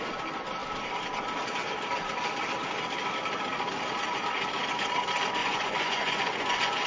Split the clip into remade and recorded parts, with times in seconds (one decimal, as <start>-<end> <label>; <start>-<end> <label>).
0.0-5.4 recorded; 5.4-6.9 remade